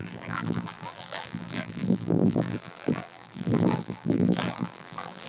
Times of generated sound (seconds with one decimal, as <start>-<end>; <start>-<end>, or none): 0.0-5.3